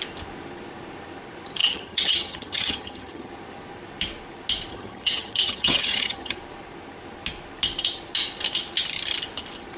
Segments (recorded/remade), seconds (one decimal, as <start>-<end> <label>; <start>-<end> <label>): 0.0-1.6 recorded; 1.6-3.3 remade; 3.3-4.7 recorded; 4.7-6.4 remade; 6.4-9.8 recorded